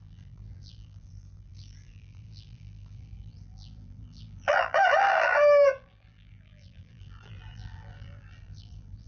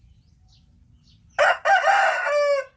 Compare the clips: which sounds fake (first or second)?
first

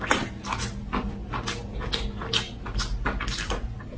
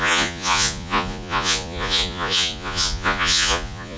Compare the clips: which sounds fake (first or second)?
second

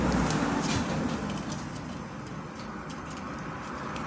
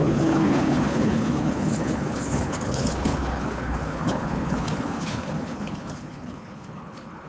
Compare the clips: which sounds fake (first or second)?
second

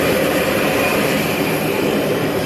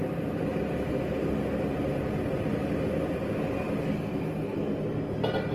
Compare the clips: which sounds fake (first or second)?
first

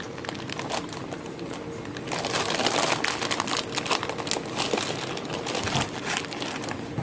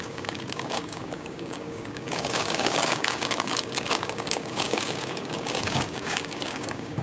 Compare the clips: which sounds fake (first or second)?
second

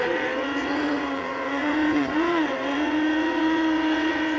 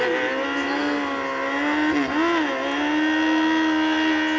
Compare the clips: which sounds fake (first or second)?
first